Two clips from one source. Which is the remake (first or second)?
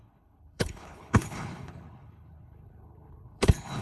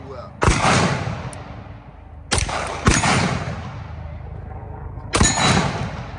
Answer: first